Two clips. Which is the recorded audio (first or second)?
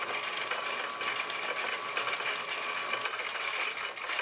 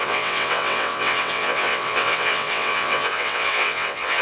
first